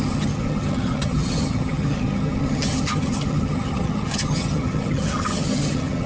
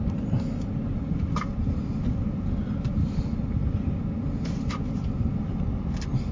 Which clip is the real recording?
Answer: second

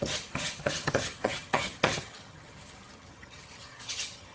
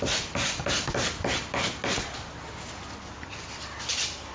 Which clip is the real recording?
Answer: second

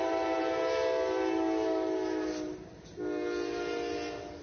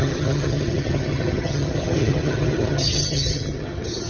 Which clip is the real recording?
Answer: first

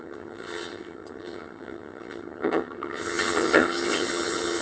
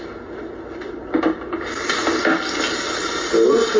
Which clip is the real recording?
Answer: second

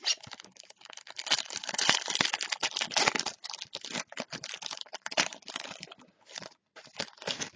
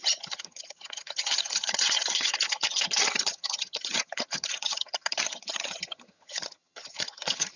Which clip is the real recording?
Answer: first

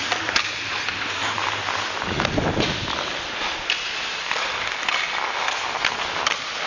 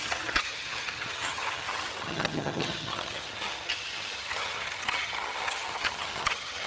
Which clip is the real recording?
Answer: first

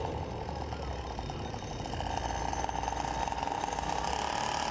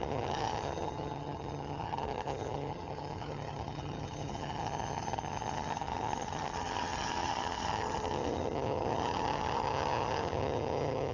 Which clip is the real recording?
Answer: first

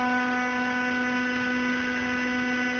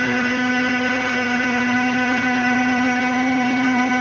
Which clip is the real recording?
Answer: first